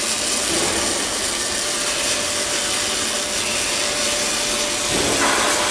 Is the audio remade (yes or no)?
no